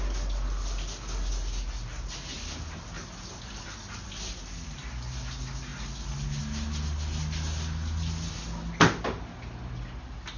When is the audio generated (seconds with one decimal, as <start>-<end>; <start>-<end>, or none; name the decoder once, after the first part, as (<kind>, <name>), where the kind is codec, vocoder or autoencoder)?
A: none